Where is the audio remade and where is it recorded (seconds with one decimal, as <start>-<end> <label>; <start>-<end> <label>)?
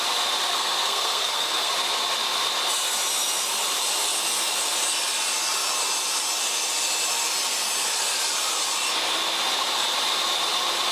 0.0-0.5 recorded; 0.5-1.7 remade; 1.7-10.9 recorded